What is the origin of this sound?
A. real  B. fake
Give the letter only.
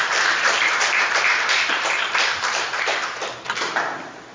B